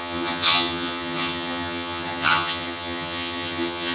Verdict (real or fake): fake